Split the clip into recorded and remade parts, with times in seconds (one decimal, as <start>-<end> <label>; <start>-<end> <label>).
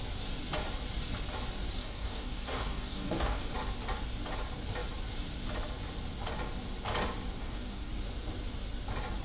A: 0.0-1.8 recorded; 1.8-3.5 remade; 3.5-7.4 recorded; 7.4-7.9 remade; 7.9-9.2 recorded